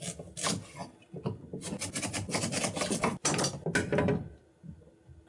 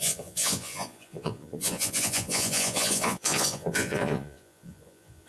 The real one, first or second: first